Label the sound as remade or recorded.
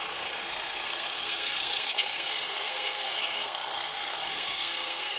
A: remade